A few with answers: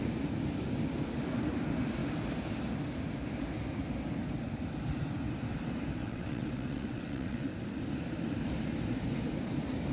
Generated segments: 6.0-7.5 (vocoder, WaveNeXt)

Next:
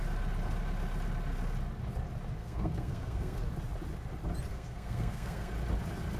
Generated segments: 2.4-3.4 (codec, SNAC); 4.5-5.5

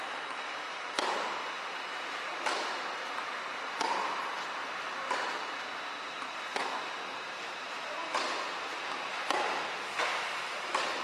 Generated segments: none

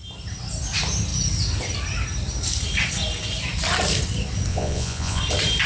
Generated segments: 4.5-5.2 (vocoder, Vocos)

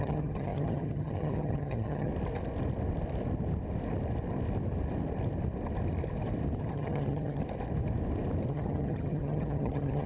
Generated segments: 0.0-2.1 (vocoder, HiFi-GAN); 6.6-7.4; 8.5-10.1

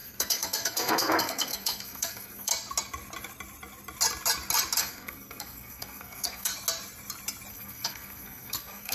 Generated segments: 0.0-2.5 (codec, SNAC); 4.8-6.5; 7.5-8.9

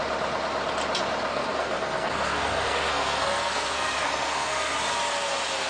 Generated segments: 1.3-4.7 (codec, SNAC)

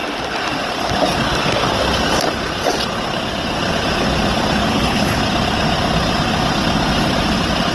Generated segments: 4.7-5.2 (codec, HILCodec)